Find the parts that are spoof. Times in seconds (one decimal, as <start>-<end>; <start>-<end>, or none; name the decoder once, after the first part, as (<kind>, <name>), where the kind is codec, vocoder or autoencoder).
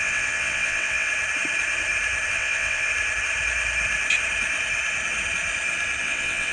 0.0-1.1 (vocoder, WaveNeXt); 2.3-2.9; 6.0-6.5